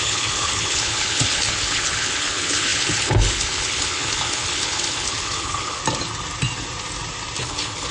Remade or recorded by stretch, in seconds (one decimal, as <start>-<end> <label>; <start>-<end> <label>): 0.0-5.8 remade; 5.8-7.4 recorded; 7.4-7.9 remade